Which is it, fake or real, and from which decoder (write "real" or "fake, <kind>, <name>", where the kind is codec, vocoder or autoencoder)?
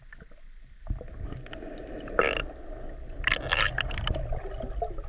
real